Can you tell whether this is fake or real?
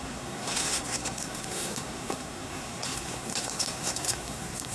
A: fake